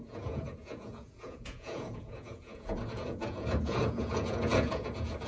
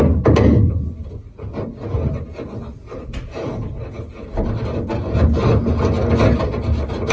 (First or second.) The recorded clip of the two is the second